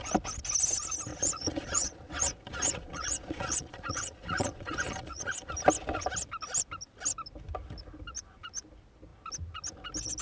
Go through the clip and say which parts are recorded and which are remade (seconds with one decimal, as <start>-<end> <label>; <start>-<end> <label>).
0.0-1.1 recorded; 1.1-5.5 remade; 5.5-10.2 recorded

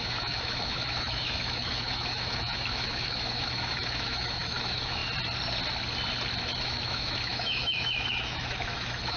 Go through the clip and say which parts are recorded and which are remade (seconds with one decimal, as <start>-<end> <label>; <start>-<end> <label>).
0.0-5.0 remade; 5.0-6.6 recorded; 6.6-9.2 remade

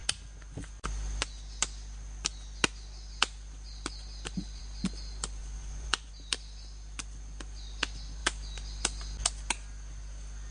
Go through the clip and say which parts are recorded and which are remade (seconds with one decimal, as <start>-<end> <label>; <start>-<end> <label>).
0.0-5.4 recorded; 5.4-6.1 remade; 6.1-10.5 recorded

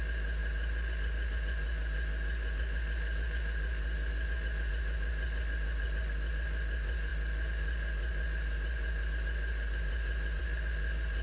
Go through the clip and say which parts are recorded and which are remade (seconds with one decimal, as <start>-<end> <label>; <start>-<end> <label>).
0.0-11.2 recorded

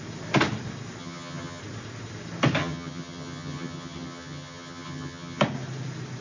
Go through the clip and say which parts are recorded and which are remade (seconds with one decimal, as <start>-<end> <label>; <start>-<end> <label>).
0.0-1.0 recorded; 1.0-1.6 remade; 1.6-2.6 recorded; 2.6-5.4 remade; 5.4-6.2 recorded

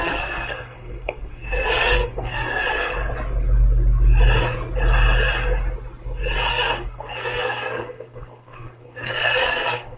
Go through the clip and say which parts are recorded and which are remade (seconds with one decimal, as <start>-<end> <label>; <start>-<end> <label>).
0.0-2.9 remade; 2.9-6.5 recorded; 6.5-10.0 remade

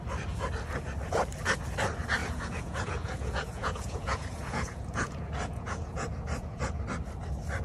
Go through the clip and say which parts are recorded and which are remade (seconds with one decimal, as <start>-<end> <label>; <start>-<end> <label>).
0.0-2.2 recorded; 2.2-6.8 remade; 6.8-7.6 recorded

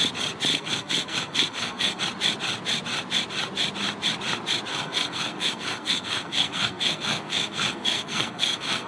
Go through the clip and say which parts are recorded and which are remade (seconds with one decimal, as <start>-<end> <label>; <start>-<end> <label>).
0.0-0.5 recorded; 0.5-2.0 remade; 2.0-4.7 recorded; 4.7-8.9 remade